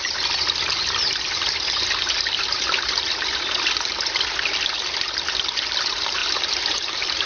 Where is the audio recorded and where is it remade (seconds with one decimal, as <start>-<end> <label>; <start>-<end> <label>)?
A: 0.0-6.2 recorded; 6.2-7.3 remade